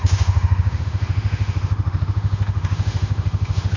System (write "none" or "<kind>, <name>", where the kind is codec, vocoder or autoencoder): autoencoder, DAC-VAE